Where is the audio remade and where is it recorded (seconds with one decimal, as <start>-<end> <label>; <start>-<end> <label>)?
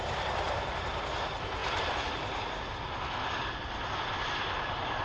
0.0-5.0 recorded